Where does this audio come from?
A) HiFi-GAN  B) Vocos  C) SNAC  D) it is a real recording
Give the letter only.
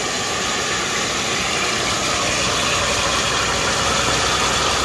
D